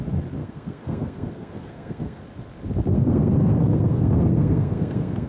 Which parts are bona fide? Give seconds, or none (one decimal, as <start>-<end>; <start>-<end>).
0.0-0.4; 2.2-2.9